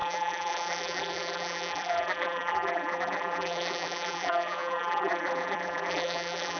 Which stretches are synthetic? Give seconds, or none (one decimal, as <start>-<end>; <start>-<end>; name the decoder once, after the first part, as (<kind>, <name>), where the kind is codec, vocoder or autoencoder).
0.0-6.6 (vocoder, BigVGAN v2)